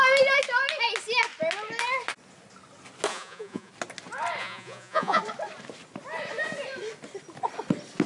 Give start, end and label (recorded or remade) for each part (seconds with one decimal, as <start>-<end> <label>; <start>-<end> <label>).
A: 0.0-3.1 recorded; 3.1-3.7 remade; 3.7-4.4 recorded; 4.4-5.2 remade; 5.2-8.1 recorded